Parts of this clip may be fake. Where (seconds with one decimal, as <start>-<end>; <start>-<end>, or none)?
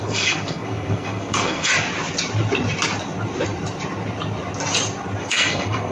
0.0-1.7; 5.2-5.9